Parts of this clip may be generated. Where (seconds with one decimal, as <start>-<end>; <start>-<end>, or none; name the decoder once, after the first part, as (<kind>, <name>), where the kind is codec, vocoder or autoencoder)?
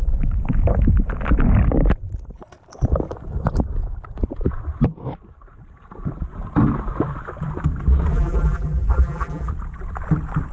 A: 8.1-9.5 (vocoder, BigVGAN v2)